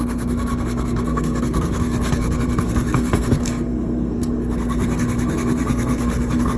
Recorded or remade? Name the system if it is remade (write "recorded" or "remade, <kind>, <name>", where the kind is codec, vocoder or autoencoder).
remade, codec, SNAC